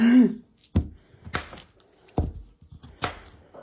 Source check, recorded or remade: recorded